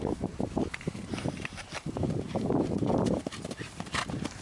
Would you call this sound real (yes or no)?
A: no